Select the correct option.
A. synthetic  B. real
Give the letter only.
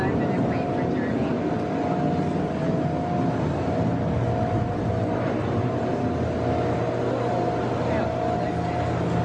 B